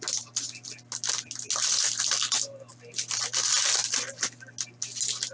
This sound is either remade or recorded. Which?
recorded